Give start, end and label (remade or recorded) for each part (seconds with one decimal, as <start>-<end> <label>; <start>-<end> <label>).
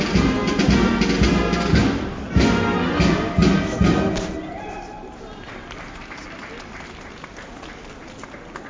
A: 0.0-8.7 recorded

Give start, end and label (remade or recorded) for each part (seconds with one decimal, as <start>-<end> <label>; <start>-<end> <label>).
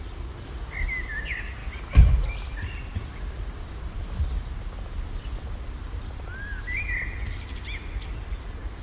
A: 0.0-8.8 recorded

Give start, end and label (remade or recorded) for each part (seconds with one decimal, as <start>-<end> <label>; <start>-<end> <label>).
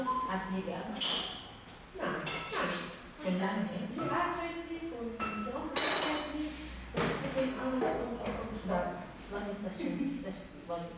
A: 0.0-3.4 recorded; 3.4-3.9 remade; 3.9-7.4 recorded; 7.4-8.0 remade; 8.0-11.0 recorded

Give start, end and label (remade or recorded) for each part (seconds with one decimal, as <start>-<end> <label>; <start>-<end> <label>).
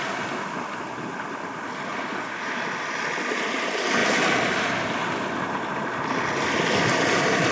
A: 0.0-1.9 recorded; 1.9-2.6 remade; 2.6-7.5 recorded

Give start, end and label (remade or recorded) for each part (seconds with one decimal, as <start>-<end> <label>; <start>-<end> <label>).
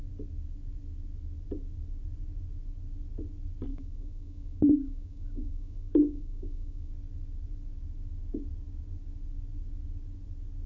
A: 0.0-3.7 recorded; 3.7-6.9 remade; 6.9-10.7 recorded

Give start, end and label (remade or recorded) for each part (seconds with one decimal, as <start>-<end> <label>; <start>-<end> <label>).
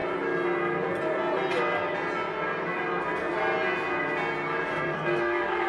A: 0.0-4.7 recorded; 4.7-5.7 remade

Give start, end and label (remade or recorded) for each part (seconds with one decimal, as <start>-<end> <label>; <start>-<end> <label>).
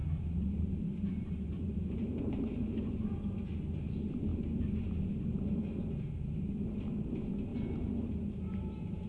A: 0.0-3.3 remade; 3.3-7.5 recorded; 7.5-8.1 remade; 8.1-9.1 recorded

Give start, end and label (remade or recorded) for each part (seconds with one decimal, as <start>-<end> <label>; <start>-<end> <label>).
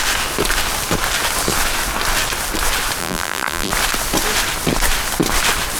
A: 0.0-3.0 recorded; 3.0-3.7 remade; 3.7-5.8 recorded